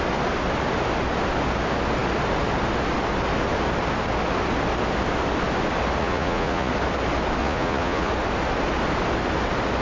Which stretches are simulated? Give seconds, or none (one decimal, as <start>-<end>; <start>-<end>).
6.0-6.7; 7.4-8.1